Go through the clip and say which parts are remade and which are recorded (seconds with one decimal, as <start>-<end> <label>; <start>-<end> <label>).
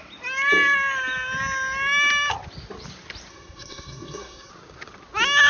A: 0.0-3.3 recorded; 3.3-4.5 remade; 4.5-5.5 recorded